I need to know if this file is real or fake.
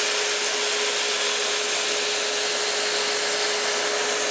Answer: real